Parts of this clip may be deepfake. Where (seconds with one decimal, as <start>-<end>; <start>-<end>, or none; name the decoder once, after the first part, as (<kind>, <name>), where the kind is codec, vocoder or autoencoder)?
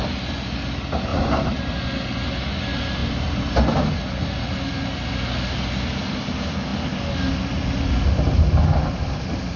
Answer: 1.1-1.6 (vocoder, BigVGAN v2)